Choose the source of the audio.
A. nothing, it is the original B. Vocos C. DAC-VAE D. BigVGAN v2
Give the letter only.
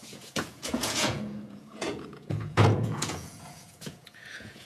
B